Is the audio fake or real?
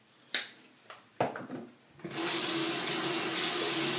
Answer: real